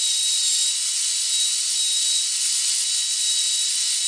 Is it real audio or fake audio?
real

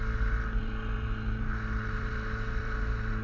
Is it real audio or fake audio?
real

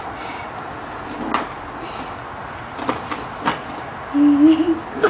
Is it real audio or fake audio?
real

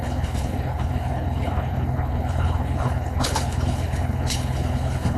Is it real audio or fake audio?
fake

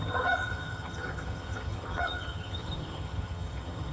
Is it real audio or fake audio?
fake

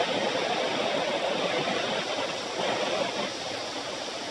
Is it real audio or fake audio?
real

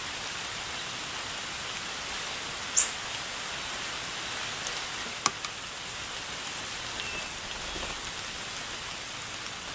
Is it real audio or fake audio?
real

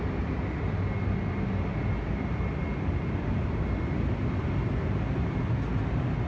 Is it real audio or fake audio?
real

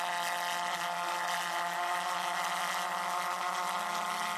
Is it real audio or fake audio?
real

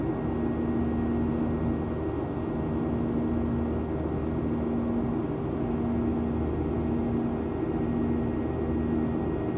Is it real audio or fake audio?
real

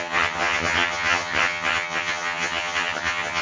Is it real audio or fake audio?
fake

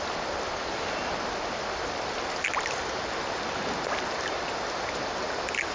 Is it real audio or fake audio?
real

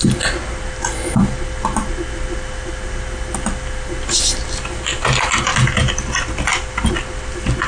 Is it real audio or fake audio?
real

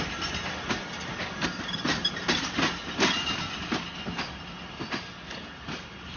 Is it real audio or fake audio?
real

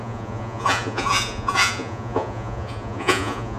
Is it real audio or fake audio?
fake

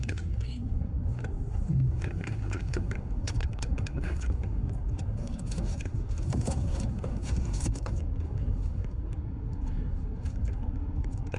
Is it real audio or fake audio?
fake